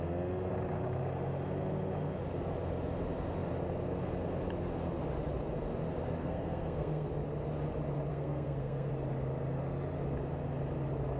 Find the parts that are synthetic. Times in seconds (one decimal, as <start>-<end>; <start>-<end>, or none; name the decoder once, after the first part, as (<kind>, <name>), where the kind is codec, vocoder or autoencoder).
6.2-7.1 (codec, SNAC); 8.1-8.9